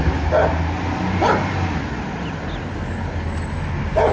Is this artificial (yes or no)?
no